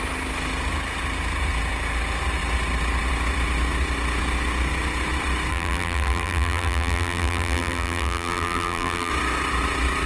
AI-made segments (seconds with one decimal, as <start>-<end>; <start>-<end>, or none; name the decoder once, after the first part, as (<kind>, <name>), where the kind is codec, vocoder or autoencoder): 5.5-9.1 (vocoder, BigVGAN v2)